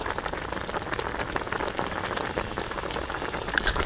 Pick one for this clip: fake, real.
real